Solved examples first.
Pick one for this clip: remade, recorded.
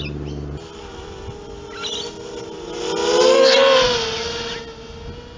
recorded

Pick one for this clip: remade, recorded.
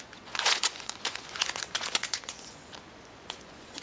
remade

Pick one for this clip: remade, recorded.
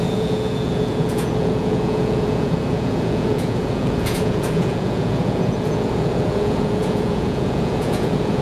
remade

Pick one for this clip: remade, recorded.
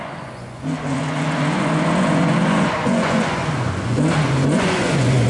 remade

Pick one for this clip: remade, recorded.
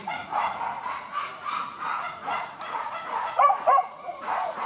remade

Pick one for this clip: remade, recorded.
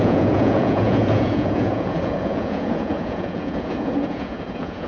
remade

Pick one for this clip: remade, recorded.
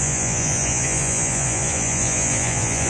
remade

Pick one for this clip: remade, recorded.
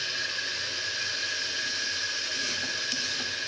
recorded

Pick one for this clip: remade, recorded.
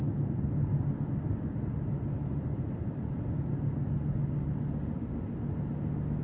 recorded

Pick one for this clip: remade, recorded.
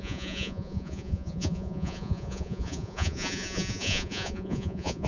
remade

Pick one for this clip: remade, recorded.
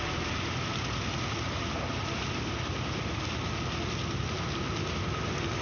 recorded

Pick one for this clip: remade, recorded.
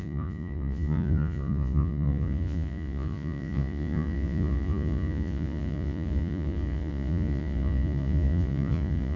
remade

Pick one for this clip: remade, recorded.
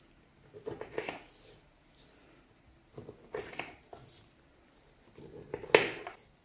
recorded